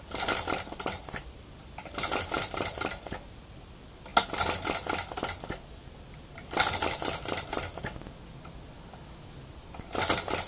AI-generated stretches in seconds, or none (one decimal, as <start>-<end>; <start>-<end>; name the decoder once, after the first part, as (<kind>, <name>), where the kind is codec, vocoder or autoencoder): none